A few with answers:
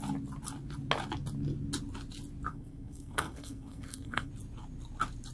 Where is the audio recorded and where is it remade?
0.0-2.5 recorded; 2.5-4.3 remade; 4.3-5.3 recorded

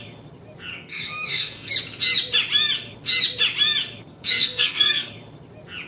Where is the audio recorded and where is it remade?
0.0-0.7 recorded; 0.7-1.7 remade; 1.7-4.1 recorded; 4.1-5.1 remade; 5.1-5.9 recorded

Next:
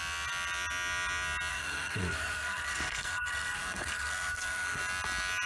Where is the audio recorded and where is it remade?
0.0-1.5 recorded; 1.5-4.8 remade; 4.8-5.5 recorded